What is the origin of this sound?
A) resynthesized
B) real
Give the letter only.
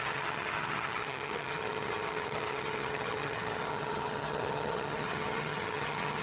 A